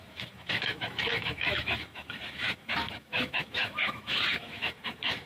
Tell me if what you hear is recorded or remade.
remade